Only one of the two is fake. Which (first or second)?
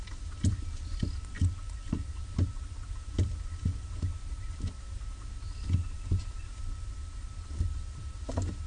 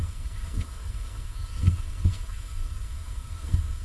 second